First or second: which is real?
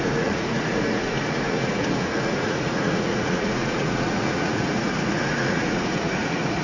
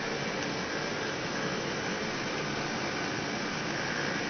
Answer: second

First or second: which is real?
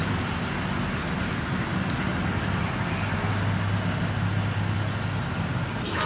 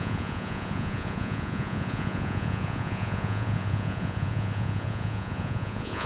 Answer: first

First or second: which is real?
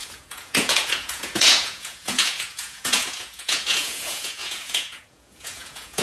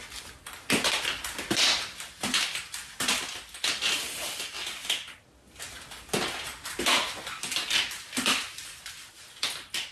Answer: second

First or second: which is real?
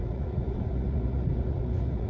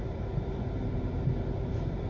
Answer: second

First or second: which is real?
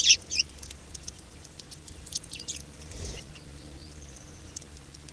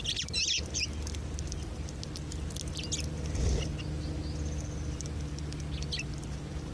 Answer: second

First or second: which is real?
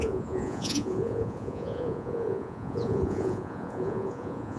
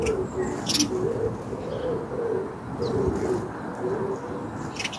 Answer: second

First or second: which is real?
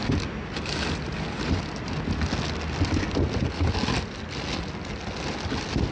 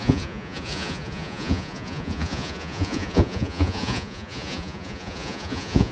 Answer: first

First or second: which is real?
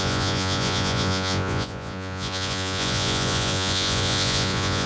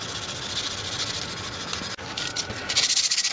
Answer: second